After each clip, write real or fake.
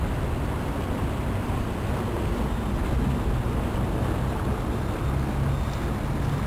real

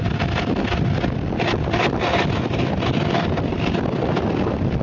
real